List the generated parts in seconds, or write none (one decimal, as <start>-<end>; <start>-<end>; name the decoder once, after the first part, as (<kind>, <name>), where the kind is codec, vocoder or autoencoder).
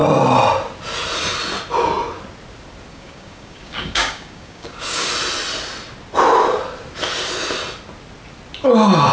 2.9-5.1 (codec, DAC)